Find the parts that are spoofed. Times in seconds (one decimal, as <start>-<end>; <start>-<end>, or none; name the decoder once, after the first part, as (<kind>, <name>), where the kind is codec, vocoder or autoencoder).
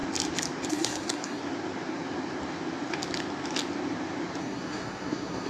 0.7-1.4 (codec, SNAC); 4.4-5.5